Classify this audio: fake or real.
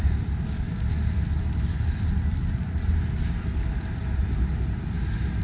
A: real